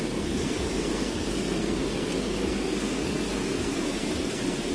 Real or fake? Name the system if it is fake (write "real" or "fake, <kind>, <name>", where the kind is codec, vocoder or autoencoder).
fake, codec, SNAC